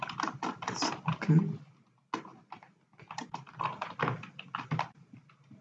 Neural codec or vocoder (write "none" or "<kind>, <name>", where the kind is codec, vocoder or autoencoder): none